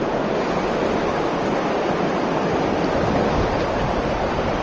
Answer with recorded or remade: recorded